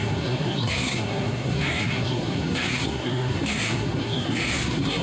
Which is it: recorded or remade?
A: remade